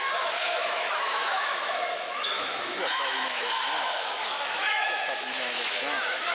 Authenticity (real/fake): fake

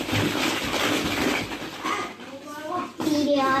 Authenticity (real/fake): real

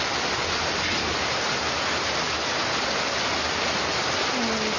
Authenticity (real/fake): real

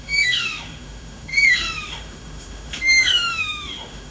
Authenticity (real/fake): fake